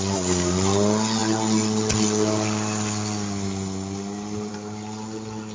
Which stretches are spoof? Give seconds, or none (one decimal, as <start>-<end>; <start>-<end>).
none